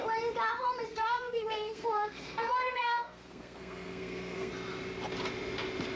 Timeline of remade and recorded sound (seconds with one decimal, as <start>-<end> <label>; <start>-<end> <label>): 0.0-0.9 recorded; 0.9-4.5 remade; 4.5-6.0 recorded